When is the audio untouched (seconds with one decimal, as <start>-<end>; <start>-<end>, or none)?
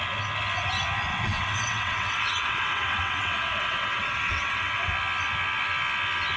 0.0-1.1; 4.9-6.4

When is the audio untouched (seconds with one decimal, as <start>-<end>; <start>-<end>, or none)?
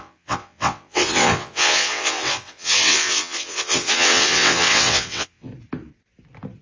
5.5-6.6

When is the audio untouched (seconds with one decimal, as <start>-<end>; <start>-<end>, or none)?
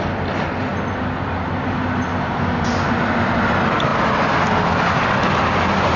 0.0-6.0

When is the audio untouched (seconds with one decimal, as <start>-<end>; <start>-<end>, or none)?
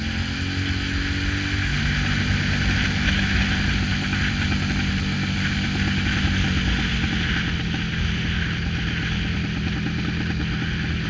0.0-11.1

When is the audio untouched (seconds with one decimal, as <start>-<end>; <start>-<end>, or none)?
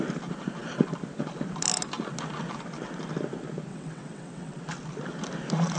0.0-3.7; 4.6-5.8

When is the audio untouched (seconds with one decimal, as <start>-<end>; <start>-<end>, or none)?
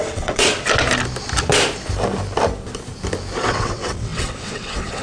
0.5-3.5